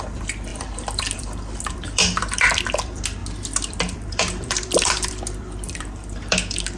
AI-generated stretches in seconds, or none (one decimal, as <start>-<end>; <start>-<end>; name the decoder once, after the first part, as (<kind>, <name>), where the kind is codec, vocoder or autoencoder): 0.0-3.2 (vocoder, BigVGAN v2); 3.8-6.8